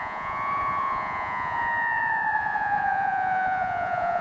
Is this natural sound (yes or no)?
no